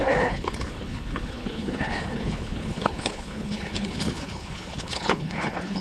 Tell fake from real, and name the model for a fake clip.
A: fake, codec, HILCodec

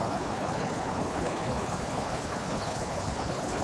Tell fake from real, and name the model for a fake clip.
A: fake, codec, HILCodec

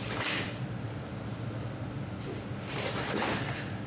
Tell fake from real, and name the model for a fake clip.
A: real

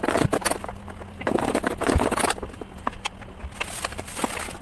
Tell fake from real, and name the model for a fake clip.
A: real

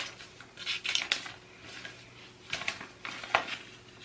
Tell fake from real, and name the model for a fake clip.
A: real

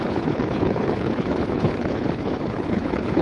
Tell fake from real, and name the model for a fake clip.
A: fake, codec, HILCodec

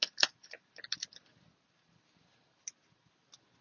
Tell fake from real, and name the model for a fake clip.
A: real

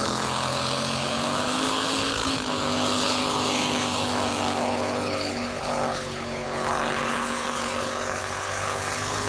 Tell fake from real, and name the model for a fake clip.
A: fake, codec, HILCodec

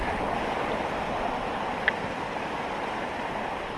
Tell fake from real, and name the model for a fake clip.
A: real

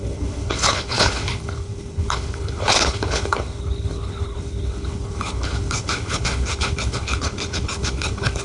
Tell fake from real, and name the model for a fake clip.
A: fake, codec, HILCodec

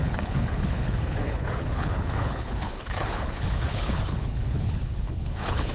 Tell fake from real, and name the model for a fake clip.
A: fake, codec, HILCodec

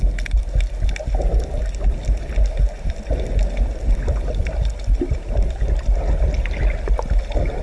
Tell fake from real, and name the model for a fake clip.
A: real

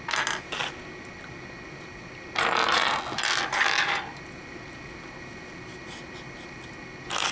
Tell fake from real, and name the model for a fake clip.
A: real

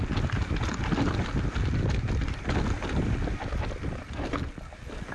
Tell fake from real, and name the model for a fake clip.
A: real